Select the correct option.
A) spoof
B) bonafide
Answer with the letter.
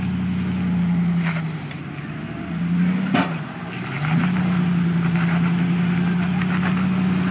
B